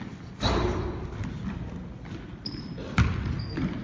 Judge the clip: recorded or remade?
recorded